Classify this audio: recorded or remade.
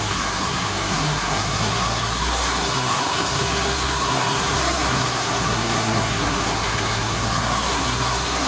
remade